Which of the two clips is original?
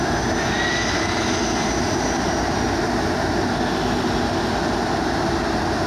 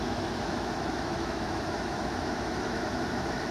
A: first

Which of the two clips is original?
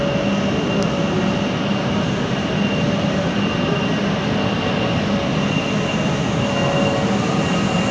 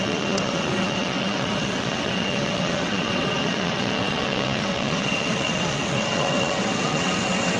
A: first